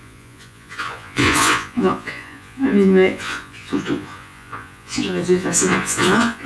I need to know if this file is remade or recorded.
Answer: remade